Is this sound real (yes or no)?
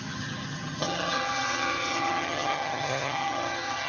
no